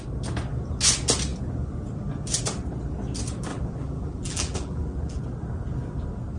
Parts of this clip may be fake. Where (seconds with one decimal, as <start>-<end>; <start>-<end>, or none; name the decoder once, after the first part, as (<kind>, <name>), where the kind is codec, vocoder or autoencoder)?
3.5-5.2 (vocoder, BigVGAN v2)